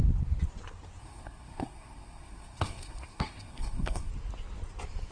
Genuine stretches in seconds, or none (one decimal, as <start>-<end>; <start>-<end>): 0.0-1.0; 4.1-5.1